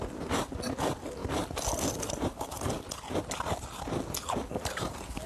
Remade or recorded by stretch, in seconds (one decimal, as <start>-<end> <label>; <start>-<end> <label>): 0.0-5.3 recorded